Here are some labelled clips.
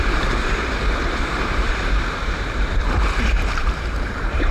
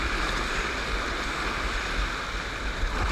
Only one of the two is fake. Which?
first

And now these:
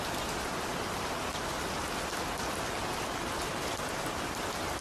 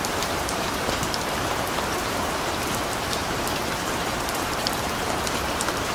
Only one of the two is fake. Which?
second